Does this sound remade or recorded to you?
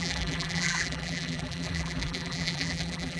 remade